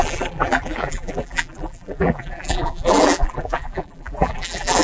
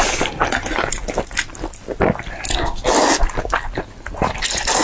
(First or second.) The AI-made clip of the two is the first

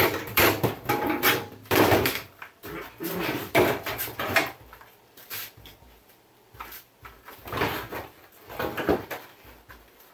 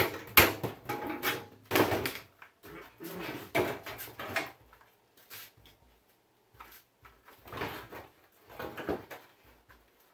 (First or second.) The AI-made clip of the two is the first